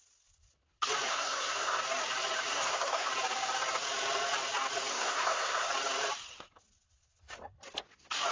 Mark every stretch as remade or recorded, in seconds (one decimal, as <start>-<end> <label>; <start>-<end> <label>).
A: 0.0-1.1 recorded; 1.1-1.8 remade; 1.8-2.5 recorded; 2.5-3.1 remade; 3.1-4.9 recorded; 4.9-5.7 remade; 5.7-8.3 recorded